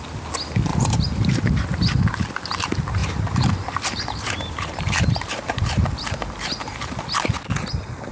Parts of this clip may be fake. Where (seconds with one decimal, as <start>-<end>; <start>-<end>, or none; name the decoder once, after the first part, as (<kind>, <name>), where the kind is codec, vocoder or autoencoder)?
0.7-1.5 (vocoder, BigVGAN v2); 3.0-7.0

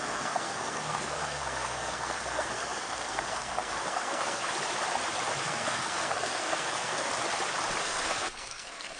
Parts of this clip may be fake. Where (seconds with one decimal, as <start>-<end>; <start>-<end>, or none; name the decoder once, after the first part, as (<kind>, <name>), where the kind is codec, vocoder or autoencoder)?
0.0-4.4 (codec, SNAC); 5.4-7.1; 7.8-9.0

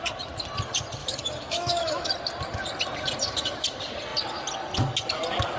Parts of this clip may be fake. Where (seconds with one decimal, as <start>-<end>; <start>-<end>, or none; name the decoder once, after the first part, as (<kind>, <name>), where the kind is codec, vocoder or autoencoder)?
1.0-2.1 (autoencoder, DAC-VAE)

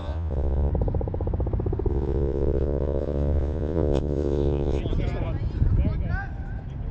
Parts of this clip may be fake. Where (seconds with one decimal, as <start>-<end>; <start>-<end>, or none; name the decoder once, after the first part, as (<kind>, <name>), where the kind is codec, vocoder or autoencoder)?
0.0-0.7 (vocoder, Vocos); 1.9-4.8